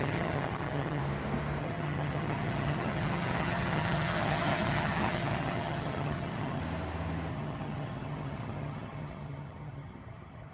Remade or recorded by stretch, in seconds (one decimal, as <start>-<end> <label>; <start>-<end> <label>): 0.0-1.0 remade; 1.0-1.6 recorded; 1.6-6.6 remade; 6.6-7.3 recorded; 7.3-10.5 remade

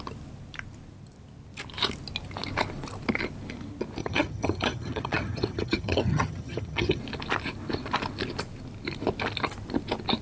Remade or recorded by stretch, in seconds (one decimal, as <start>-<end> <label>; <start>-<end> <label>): 0.0-4.0 recorded; 4.0-7.0 remade; 7.0-10.2 recorded

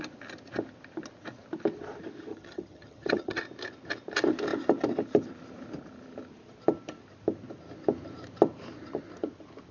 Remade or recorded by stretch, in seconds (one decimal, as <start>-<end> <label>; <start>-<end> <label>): 0.0-2.3 recorded; 2.3-3.4 remade; 3.4-9.7 recorded

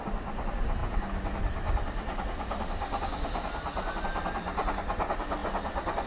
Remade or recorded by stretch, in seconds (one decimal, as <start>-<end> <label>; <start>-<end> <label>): 0.0-6.1 recorded